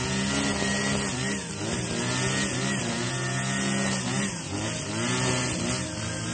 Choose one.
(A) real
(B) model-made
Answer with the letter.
A